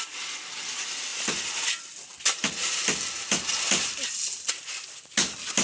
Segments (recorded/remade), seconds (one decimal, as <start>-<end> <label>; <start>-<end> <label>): 0.0-5.6 recorded

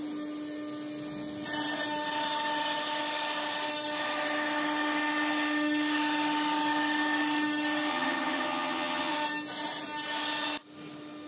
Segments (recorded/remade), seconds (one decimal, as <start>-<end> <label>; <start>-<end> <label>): 0.0-7.9 recorded; 7.9-9.1 remade; 9.1-11.3 recorded

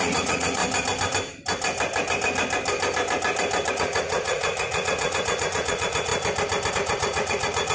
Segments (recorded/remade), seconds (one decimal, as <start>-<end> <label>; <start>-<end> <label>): 0.0-0.6 remade; 0.6-3.7 recorded; 3.7-6.1 remade; 6.1-6.7 recorded; 6.7-7.7 remade

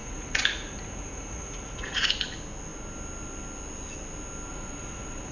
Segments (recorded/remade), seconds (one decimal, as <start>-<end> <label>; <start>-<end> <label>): 0.0-2.1 remade; 2.1-4.5 recorded; 4.5-5.3 remade

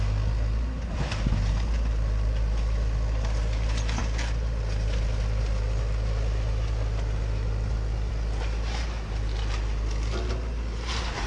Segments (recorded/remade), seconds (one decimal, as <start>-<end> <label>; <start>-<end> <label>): 0.0-11.3 recorded

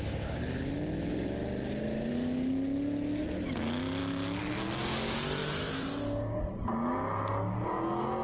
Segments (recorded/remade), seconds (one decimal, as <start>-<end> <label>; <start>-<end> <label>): 0.0-8.2 recorded

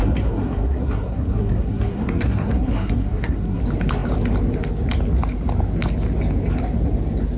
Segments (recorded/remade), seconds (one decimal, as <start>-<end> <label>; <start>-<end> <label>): 0.0-3.6 remade; 3.6-7.4 recorded